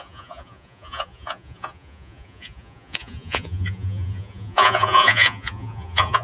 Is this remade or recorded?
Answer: remade